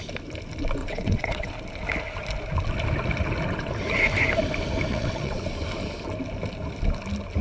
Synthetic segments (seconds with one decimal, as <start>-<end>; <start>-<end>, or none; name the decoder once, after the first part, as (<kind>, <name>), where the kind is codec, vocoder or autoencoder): 0.8-1.5 (vocoder, WaveNeXt); 4.9-5.4

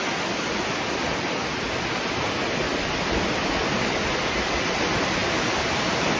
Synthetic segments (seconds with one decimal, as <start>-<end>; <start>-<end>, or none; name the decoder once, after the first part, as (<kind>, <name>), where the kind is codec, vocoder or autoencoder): none

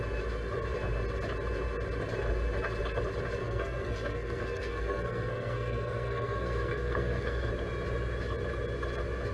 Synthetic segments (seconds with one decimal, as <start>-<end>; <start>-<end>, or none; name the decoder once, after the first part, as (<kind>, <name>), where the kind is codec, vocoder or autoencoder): 3.4-7.5 (codec, SNAC)

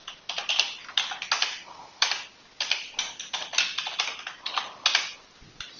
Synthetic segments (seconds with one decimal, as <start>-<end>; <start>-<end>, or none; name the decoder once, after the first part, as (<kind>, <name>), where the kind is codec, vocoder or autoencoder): 1.6-2.1 (autoencoder, DAC-VAE)

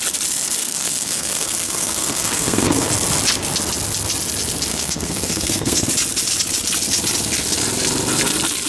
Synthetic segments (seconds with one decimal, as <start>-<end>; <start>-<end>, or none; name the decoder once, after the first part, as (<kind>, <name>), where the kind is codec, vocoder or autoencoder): 0.6-2.9 (codec, SNAC); 4.7-5.9

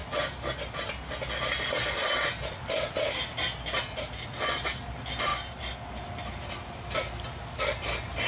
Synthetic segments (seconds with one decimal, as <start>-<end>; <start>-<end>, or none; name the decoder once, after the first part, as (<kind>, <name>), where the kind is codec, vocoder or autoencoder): none